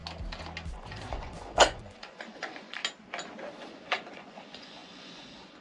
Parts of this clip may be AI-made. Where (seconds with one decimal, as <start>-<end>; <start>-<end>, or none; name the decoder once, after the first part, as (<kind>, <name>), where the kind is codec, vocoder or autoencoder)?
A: 0.7-2.8 (vocoder, Vocos); 3.5-5.6